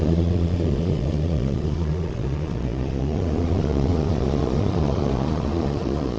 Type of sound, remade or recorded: remade